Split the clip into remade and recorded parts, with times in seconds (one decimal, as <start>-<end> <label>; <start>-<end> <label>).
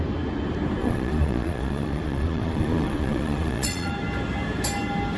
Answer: 0.0-0.8 recorded; 0.8-3.9 remade; 3.9-5.2 recorded